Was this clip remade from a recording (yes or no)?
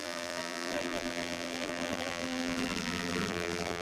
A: yes